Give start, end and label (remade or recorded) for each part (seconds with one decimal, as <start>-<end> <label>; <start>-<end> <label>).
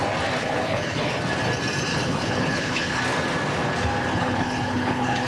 0.0-0.4 recorded; 0.4-1.1 remade; 1.1-1.9 recorded; 1.9-3.0 remade; 3.0-4.1 recorded; 4.1-5.3 remade